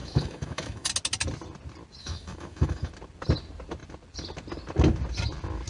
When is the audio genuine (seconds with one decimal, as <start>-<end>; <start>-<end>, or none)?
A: 0.9-2.0; 2.9-5.7